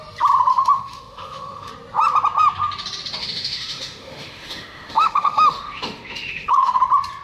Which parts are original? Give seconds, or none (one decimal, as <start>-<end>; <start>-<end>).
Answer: 0.0-0.5; 1.7-3.2; 6.8-7.2